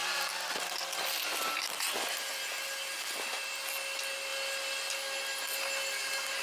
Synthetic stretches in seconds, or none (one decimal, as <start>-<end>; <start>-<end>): none